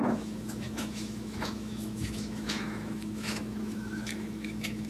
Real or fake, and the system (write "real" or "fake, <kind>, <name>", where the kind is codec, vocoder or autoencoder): fake, autoencoder, DAC-VAE